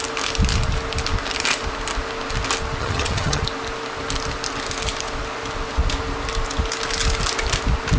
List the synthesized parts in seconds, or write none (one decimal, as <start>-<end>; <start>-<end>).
2.8-3.4